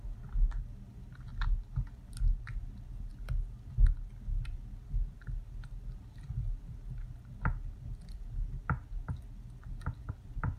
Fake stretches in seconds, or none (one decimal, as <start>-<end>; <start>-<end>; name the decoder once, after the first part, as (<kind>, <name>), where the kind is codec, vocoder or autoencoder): none